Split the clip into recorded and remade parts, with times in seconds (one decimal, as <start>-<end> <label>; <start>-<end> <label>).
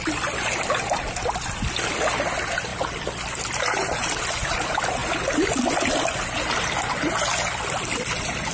0.0-8.5 recorded